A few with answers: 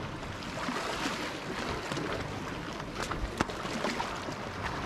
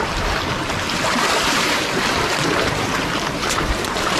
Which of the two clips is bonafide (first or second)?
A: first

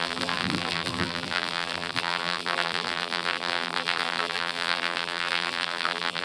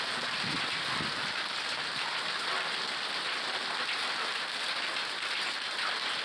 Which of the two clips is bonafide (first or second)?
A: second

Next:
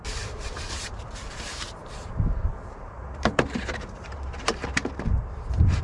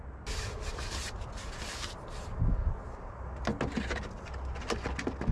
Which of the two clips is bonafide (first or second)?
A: second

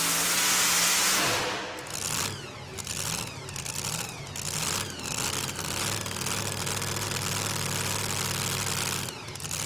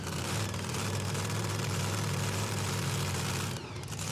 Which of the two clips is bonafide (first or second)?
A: first